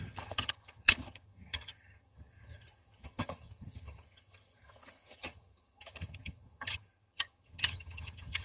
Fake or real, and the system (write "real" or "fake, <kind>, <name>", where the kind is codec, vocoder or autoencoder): fake, vocoder, HiFi-GAN